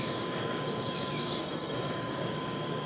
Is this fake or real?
fake